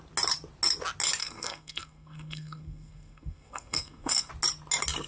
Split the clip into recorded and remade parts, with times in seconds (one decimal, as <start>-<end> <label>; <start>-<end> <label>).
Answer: 0.0-1.2 recorded; 1.2-4.3 remade; 4.3-5.1 recorded